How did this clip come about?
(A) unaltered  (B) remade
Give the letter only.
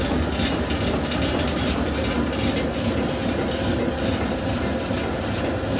A